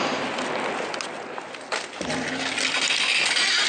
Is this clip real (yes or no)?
yes